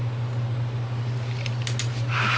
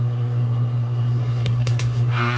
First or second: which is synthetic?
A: second